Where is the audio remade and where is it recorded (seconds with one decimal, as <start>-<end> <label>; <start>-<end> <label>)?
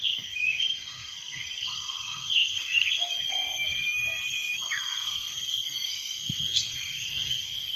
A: 0.0-7.8 remade